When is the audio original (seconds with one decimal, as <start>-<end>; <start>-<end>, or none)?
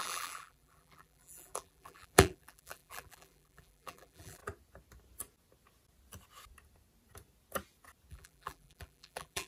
4.4-8.1